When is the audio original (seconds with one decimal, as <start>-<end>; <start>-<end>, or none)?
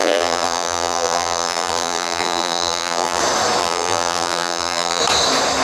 3.2-3.6; 5.0-5.6